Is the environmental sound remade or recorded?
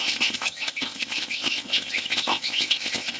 remade